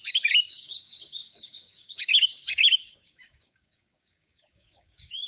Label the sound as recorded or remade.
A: remade